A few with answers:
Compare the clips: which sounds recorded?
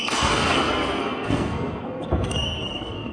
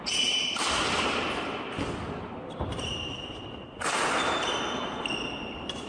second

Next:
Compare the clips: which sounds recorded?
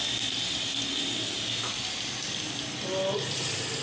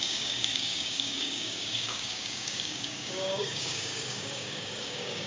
first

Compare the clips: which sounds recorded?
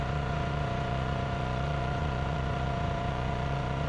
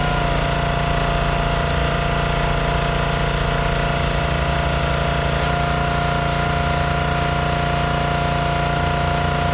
second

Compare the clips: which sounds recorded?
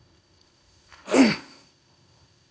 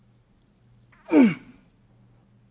second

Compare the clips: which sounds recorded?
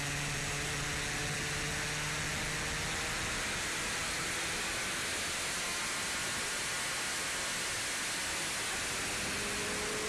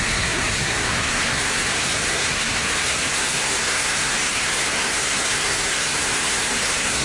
first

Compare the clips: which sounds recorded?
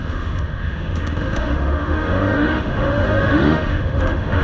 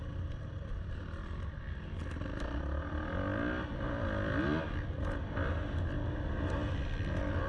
second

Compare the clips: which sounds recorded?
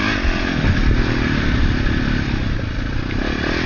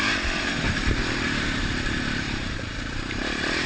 first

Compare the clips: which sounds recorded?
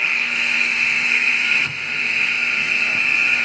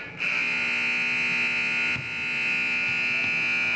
second